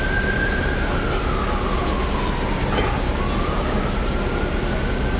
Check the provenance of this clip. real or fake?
real